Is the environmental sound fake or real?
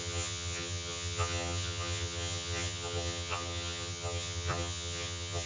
fake